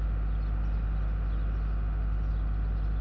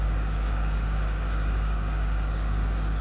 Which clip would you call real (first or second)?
first